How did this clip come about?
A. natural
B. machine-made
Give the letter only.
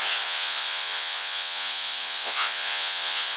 B